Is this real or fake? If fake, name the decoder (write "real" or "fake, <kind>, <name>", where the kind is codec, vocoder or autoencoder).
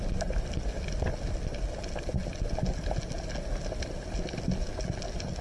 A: real